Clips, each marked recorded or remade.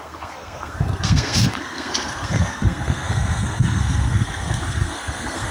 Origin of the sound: remade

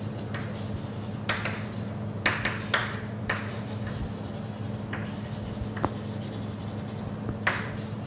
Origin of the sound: recorded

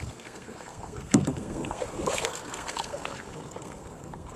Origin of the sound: remade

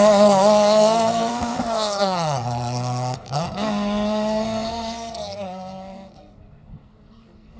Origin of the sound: remade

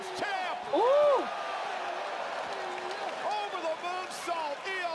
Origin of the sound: recorded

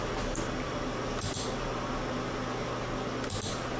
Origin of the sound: recorded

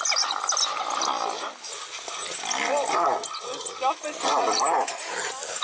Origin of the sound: recorded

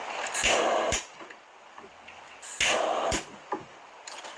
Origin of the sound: recorded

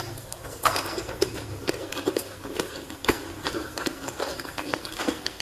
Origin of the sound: remade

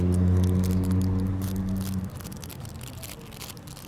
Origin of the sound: recorded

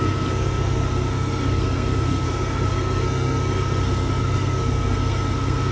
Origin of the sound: remade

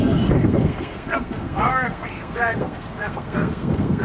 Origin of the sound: remade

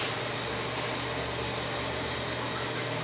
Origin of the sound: recorded